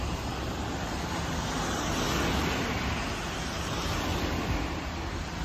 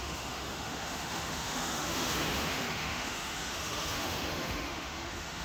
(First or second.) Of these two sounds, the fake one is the second